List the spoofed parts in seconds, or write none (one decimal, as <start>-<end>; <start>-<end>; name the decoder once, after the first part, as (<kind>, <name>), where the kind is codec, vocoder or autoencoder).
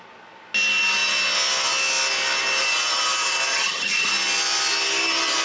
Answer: 3.5-4.1 (vocoder, HiFi-GAN)